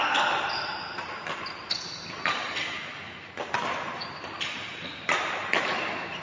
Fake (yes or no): no